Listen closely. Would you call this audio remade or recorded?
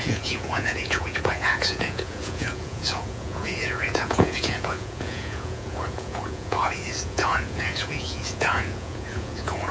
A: remade